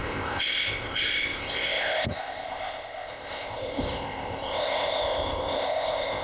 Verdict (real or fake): fake